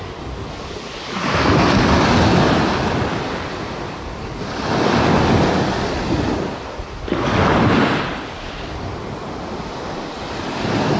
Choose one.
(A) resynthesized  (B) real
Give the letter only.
B